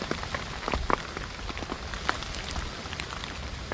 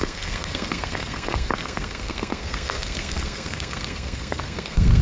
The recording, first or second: first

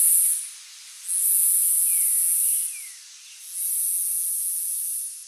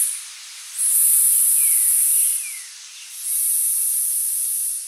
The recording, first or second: first